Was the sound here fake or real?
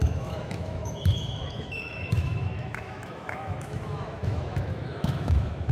fake